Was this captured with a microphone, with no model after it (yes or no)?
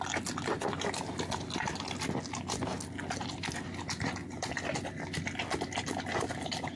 yes